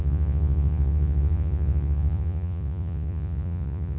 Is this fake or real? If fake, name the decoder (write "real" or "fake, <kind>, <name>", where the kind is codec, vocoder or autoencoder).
fake, vocoder, Vocos